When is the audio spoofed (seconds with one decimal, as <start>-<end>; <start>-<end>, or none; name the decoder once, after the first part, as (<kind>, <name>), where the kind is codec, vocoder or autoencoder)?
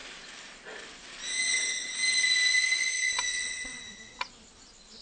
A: 3.3-3.8 (vocoder, WaveNeXt)